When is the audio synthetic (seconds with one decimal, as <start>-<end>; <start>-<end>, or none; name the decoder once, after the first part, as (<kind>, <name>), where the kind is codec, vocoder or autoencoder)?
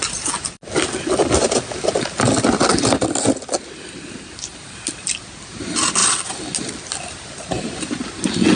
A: none